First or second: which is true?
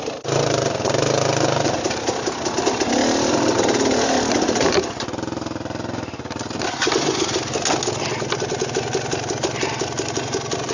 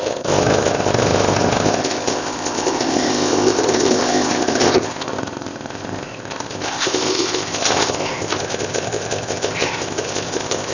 first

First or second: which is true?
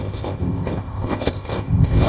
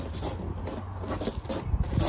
second